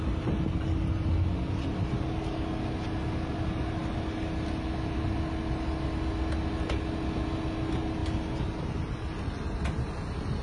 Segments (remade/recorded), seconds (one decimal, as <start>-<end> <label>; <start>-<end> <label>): 0.0-10.4 recorded